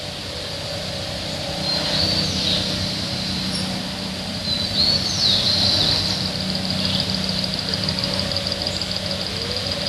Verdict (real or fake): real